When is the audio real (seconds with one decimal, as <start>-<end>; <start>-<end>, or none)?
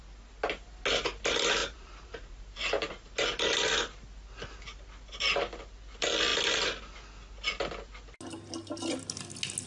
0.0-1.6; 2.9-9.7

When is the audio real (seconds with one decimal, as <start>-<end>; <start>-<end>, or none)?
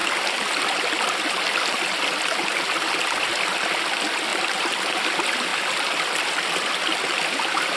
0.0-4.3; 5.0-5.5; 6.8-7.8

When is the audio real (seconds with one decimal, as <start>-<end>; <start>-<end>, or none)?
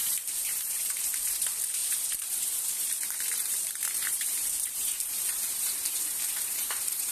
none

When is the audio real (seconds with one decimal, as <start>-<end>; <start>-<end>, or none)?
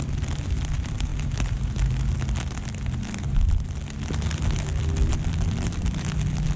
1.1-5.1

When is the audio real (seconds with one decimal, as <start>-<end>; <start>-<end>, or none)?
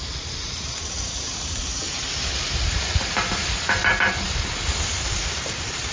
1.7-2.3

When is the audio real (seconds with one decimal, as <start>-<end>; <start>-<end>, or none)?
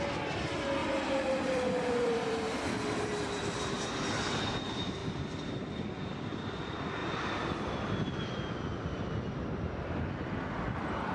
0.0-0.8; 4.4-5.0; 5.7-7.0; 7.6-11.1